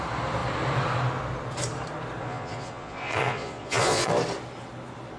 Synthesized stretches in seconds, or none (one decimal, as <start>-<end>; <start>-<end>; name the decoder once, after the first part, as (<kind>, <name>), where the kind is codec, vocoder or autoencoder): 2.2-4.1 (vocoder, Vocos)